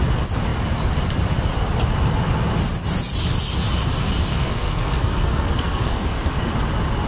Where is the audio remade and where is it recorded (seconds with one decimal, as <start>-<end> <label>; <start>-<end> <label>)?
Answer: 0.0-4.3 recorded; 4.3-6.5 remade; 6.5-7.1 recorded